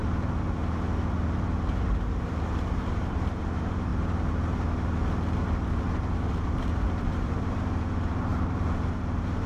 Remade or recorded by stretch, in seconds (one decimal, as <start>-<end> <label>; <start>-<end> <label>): 0.0-1.7 recorded; 1.7-3.9 remade; 3.9-5.8 recorded; 5.8-9.5 remade